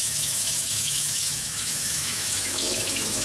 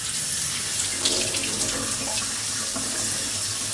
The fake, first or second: first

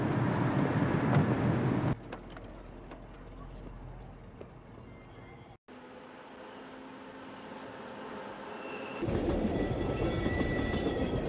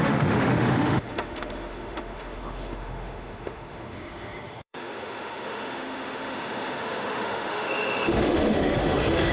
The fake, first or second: second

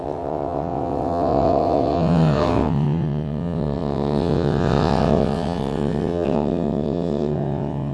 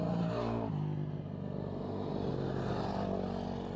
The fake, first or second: first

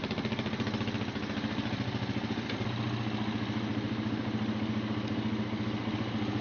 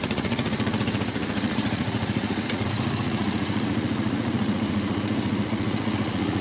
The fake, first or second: second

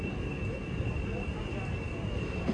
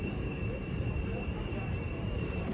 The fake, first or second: second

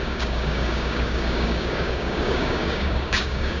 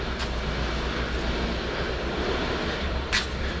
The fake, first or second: first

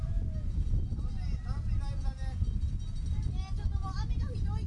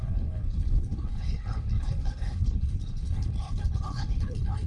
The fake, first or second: second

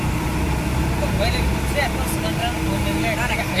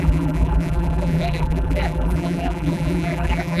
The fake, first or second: second